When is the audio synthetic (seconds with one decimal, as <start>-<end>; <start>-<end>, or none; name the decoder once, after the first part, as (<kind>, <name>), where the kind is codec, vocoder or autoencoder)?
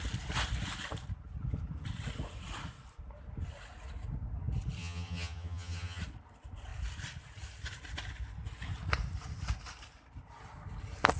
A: 4.8-6.0 (vocoder, HiFi-GAN)